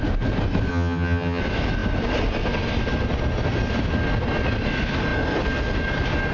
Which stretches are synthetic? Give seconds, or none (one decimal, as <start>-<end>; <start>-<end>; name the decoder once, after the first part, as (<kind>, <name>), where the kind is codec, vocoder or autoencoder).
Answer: 0.7-1.4 (vocoder, HiFi-GAN)